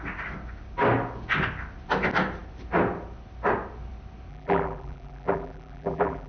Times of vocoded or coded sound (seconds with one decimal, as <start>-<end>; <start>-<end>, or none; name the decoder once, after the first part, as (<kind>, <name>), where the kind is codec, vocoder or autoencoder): 4.3-6.3 (vocoder, BigVGAN v2)